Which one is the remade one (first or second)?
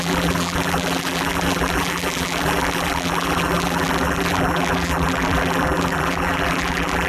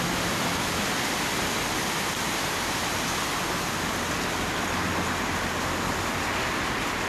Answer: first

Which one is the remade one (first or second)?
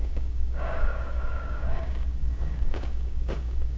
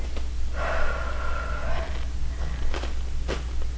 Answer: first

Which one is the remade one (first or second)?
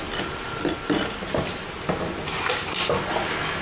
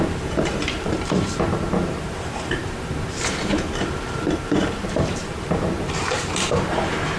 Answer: second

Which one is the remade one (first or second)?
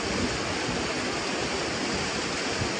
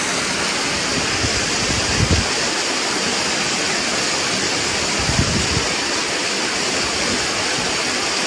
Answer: second